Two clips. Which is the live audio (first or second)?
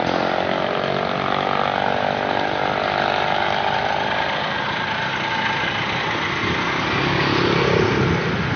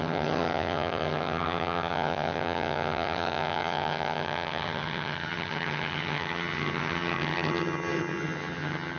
first